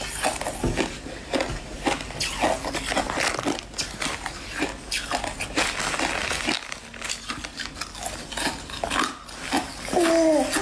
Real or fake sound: real